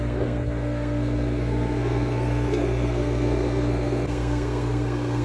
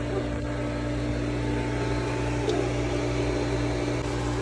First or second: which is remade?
first